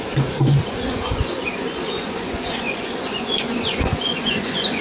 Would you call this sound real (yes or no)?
no